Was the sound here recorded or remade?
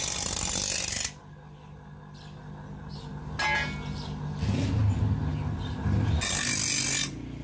recorded